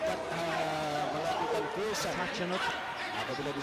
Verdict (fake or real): fake